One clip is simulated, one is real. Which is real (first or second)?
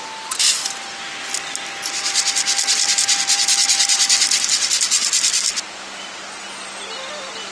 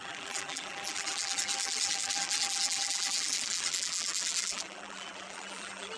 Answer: first